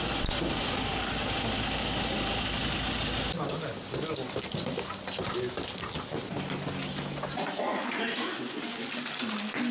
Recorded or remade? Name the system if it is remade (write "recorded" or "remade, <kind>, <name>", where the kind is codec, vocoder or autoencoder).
recorded